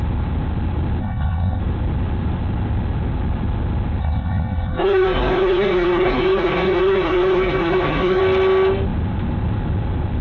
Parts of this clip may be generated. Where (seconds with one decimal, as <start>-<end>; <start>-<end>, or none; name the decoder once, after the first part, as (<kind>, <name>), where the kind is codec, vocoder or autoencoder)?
1.0-1.6 (codec, SNAC); 4.0-8.2